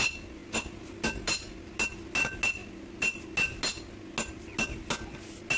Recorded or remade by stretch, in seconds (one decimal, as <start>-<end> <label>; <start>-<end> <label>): 0.0-5.6 recorded